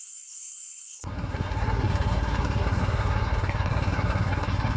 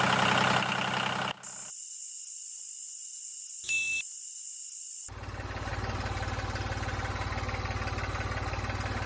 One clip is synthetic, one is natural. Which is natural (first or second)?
second